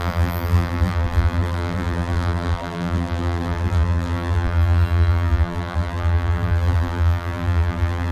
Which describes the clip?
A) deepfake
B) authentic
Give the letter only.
A